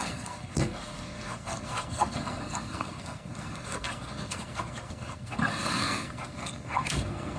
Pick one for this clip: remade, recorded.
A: remade